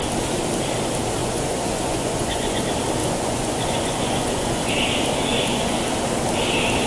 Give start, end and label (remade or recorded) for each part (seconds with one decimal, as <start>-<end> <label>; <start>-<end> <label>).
0.0-1.2 recorded; 1.2-2.6 remade; 2.6-3.0 recorded; 3.0-4.7 remade; 4.7-5.3 recorded; 5.3-5.8 remade; 5.8-6.9 recorded